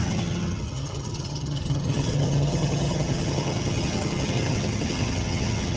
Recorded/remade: remade